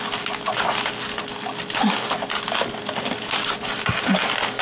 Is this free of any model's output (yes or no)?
yes